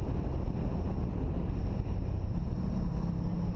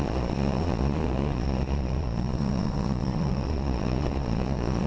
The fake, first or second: second